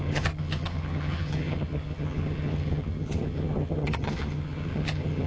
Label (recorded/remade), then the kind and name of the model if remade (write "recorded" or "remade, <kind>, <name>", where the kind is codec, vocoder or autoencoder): remade, vocoder, HiFi-GAN